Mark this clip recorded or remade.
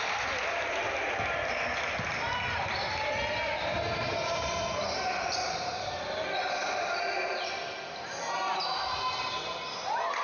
recorded